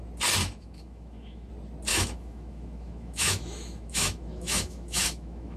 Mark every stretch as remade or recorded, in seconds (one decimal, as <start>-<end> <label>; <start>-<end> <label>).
0.0-0.4 recorded; 0.4-1.5 remade; 1.5-1.9 recorded; 1.9-5.6 remade